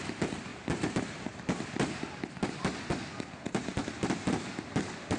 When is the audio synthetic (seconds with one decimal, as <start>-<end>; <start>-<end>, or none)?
0.5-2.1